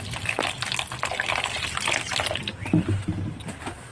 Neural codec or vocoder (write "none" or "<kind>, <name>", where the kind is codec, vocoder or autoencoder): none